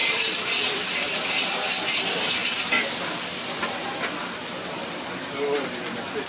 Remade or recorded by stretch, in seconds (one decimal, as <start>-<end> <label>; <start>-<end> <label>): 0.0-0.9 remade; 0.9-6.3 recorded